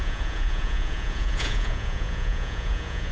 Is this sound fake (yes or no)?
yes